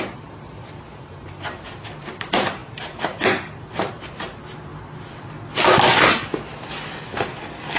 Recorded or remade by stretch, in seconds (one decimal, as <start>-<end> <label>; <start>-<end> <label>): 0.0-4.7 remade; 4.7-7.8 recorded